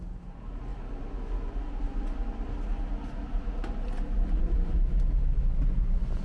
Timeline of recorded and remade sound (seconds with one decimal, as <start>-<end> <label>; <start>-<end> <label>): 0.0-6.2 recorded